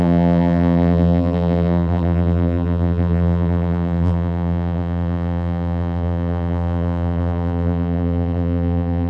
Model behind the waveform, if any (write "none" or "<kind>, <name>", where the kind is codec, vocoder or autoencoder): vocoder, BigVGAN v2